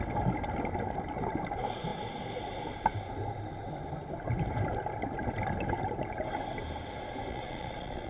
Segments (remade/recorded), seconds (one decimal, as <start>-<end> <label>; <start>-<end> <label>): 0.0-7.3 recorded; 7.3-8.1 remade